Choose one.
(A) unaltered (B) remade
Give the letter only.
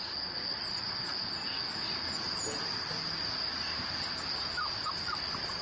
A